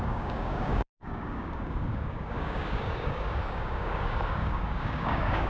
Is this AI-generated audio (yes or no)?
yes